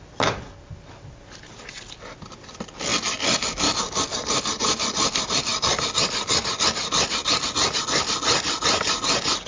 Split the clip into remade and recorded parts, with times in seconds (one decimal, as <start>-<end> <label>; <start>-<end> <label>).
0.0-9.5 recorded